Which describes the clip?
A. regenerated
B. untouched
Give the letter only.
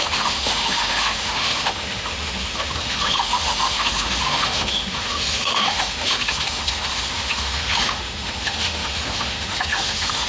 A